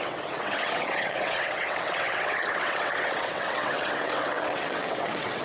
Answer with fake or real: fake